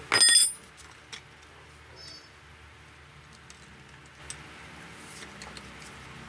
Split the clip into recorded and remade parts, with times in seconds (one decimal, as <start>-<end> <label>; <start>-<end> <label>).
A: 0.0-6.3 recorded